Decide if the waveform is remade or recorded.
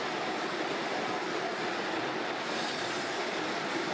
recorded